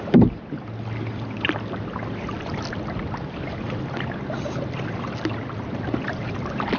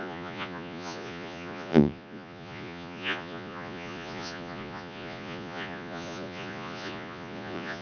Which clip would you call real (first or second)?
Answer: first